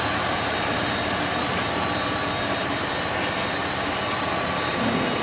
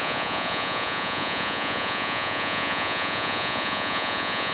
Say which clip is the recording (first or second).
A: first